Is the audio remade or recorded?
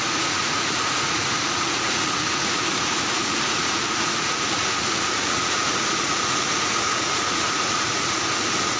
remade